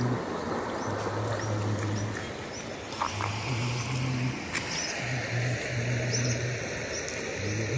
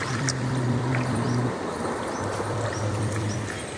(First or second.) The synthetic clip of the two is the second